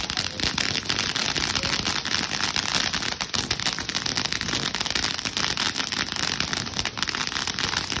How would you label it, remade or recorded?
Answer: recorded